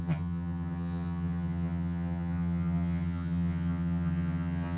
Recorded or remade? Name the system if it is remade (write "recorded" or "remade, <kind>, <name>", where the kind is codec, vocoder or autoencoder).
remade, vocoder, HiFi-GAN